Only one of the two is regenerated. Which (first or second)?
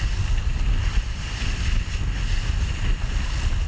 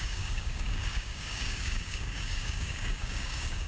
second